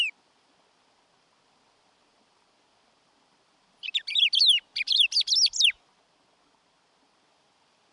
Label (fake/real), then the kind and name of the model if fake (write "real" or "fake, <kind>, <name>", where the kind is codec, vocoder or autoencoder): real